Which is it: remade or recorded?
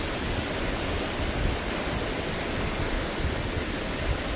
recorded